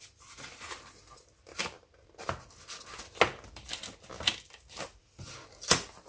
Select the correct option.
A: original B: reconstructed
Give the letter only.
A